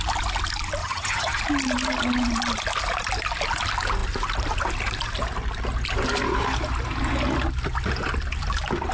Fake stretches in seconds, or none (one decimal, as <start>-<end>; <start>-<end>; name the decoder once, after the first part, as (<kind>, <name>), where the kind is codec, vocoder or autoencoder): 0.8-1.4 (vocoder, HiFi-GAN)